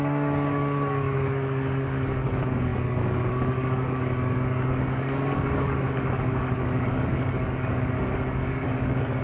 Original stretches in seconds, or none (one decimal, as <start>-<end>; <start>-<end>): none